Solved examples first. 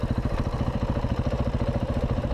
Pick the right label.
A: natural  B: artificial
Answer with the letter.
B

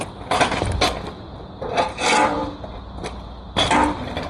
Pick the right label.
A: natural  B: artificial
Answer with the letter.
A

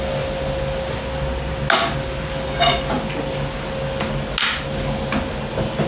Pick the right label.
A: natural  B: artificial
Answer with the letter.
A